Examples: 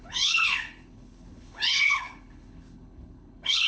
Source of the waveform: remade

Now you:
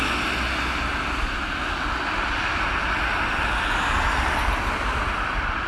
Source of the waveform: recorded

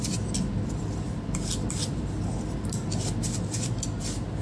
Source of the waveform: recorded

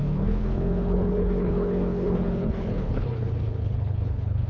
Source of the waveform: remade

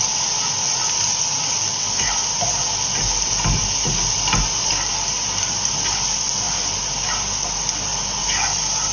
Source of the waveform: recorded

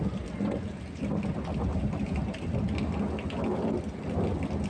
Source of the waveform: recorded